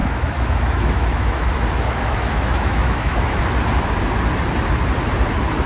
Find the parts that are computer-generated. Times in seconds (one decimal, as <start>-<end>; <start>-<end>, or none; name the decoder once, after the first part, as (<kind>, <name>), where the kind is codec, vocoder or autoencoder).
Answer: 0.0-3.4 (autoencoder, DAC-VAE)